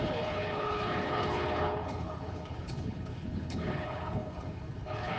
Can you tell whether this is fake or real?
fake